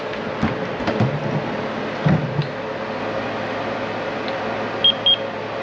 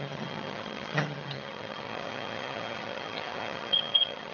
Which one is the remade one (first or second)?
second